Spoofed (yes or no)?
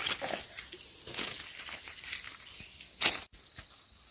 no